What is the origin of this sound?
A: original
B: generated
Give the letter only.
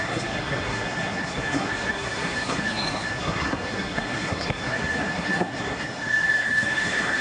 B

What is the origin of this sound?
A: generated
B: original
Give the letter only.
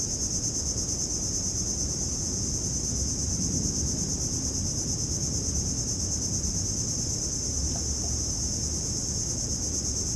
B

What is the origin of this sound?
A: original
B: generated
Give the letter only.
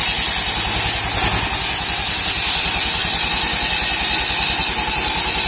A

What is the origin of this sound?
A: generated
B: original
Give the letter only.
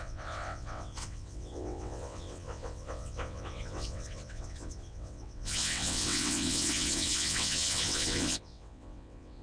A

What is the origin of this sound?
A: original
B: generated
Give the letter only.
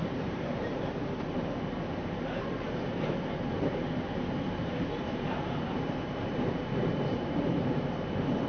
B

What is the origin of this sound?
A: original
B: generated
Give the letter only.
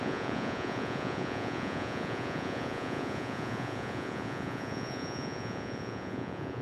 B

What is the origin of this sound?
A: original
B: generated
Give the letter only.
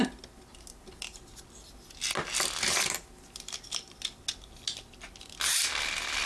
A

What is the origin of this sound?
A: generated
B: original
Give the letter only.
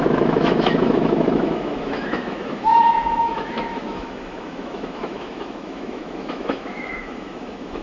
A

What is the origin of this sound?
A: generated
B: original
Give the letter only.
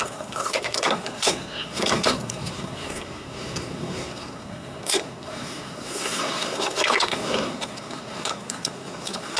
A